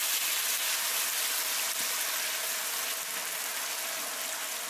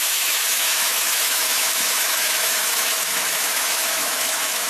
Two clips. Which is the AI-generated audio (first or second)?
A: second